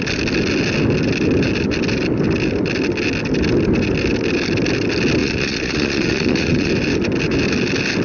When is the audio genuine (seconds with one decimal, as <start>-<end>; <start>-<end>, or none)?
0.0-5.2; 6.7-8.0